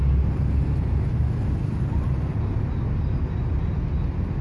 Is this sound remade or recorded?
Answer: recorded